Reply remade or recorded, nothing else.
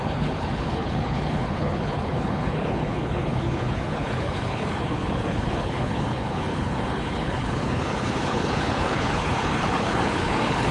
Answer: remade